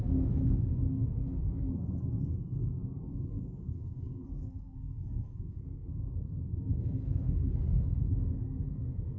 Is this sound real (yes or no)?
no